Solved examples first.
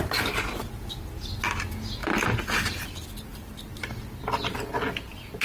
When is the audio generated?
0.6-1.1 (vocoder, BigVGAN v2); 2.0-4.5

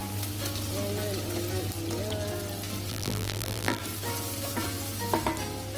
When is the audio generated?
2.9-3.8 (vocoder, BigVGAN v2)

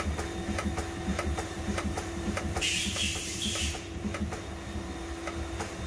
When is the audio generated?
1.1-4.3 (vocoder, BigVGAN v2)

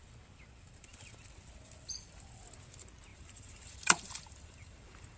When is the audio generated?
3.1-5.2 (vocoder, BigVGAN v2)

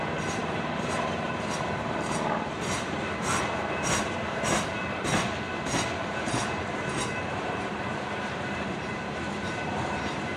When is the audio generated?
0.0-5.1 (vocoder, BigVGAN v2); 6.0-10.4

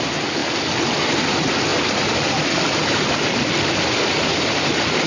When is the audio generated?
0.4-1.1 (vocoder, BigVGAN v2); 1.7-3.7

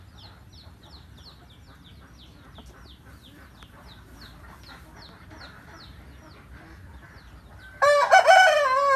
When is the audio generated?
6.9-8.2 (vocoder, BigVGAN v2)